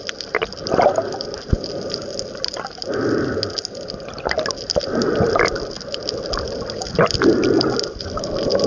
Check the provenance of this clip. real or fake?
real